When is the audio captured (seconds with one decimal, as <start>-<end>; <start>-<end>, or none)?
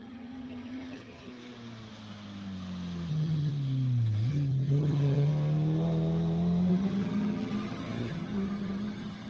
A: 1.3-3.1; 3.5-4.3; 5.3-6.7